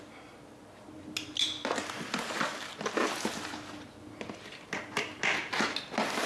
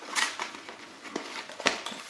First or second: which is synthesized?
second